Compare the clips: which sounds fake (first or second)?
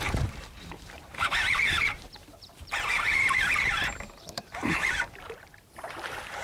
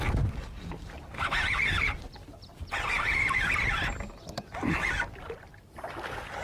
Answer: first